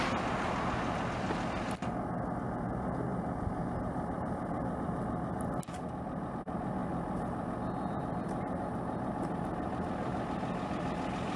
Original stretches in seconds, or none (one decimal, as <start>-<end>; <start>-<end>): 0.0-11.4